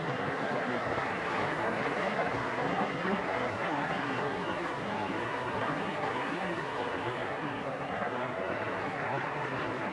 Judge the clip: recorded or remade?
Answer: remade